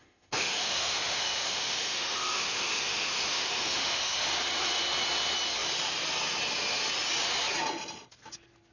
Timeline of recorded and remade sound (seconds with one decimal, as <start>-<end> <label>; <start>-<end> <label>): 0.0-4.3 remade; 4.3-8.7 recorded